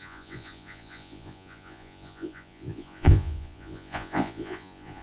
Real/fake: fake